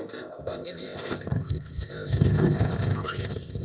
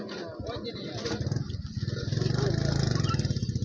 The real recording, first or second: second